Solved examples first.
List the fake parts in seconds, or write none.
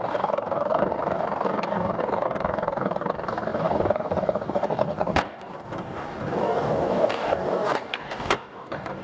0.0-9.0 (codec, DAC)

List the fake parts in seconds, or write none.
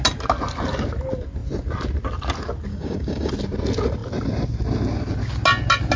2.7-3.3 (codec, DAC)